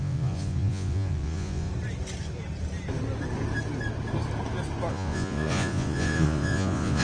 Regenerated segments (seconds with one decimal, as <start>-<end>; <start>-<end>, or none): 0.0-1.7; 4.9-7.0